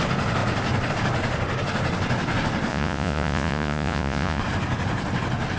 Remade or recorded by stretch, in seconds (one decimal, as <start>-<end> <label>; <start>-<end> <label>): 0.0-2.7 recorded; 2.7-4.4 remade; 4.4-5.6 recorded